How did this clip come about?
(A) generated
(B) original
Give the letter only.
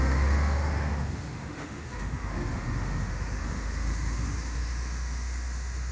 A